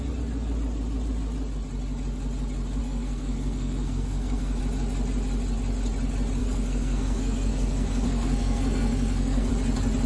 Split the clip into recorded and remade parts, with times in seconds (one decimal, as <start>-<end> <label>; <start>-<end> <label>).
0.0-2.8 recorded; 2.8-4.6 remade; 4.6-6.4 recorded; 6.4-9.5 remade; 9.5-10.1 recorded